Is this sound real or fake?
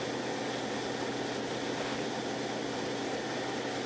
real